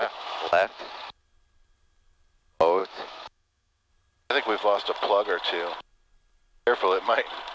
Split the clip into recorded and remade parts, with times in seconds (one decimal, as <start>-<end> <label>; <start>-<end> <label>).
0.0-0.9 remade; 0.9-2.8 recorded; 2.8-3.9 remade; 3.9-7.5 recorded